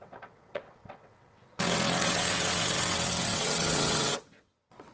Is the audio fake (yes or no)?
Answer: yes